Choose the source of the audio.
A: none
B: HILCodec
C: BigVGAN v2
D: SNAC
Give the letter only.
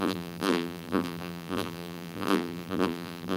C